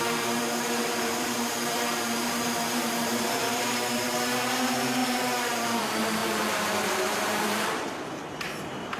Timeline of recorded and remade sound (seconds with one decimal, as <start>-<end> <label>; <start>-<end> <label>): 0.0-9.0 remade